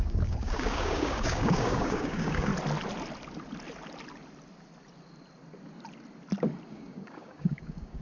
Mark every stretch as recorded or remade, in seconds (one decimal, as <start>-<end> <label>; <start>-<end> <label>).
0.0-2.5 remade; 2.5-6.7 recorded; 6.7-8.0 remade